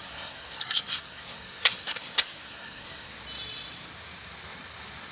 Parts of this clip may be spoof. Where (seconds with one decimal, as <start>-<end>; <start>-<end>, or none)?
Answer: 0.0-3.1

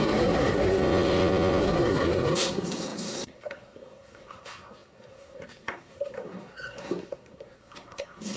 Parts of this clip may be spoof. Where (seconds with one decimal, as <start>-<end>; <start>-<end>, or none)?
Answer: 0.0-0.8; 1.6-8.4

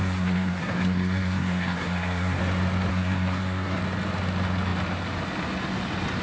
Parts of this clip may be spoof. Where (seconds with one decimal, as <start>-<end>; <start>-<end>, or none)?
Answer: 0.0-2.4; 2.9-3.8

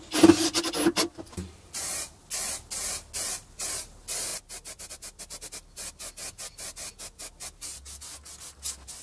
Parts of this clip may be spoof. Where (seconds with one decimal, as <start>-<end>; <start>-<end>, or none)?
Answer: none